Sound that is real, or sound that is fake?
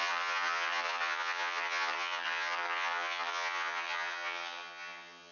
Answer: fake